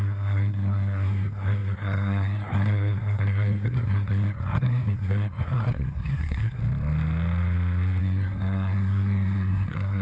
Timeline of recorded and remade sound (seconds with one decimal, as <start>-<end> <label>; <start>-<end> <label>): 0.0-6.6 remade; 6.6-8.0 recorded; 8.0-10.0 remade